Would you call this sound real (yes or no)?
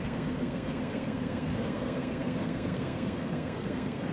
no